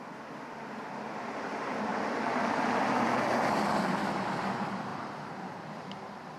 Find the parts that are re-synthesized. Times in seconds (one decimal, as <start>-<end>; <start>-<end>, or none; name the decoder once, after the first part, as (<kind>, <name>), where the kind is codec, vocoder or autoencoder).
1.9-3.9 (vocoder, BigVGAN v2); 4.9-6.4